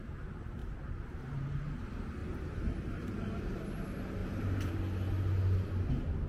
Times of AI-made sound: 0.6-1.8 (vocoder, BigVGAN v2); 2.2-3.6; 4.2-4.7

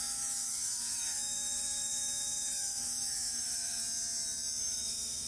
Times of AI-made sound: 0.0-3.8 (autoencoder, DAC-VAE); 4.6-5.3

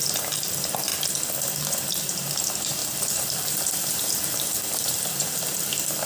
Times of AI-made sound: 0.0-0.9 (vocoder, BigVGAN v2); 1.4-6.1

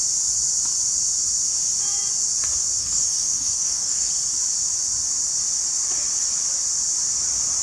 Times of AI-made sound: 2.8-4.1 (codec, DAC)

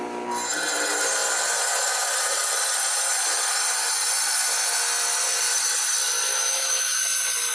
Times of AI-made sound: 6.3-7.0 (autoencoder, DAC-VAE)